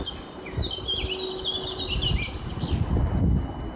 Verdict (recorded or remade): recorded